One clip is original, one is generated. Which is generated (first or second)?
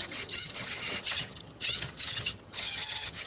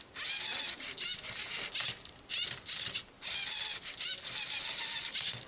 first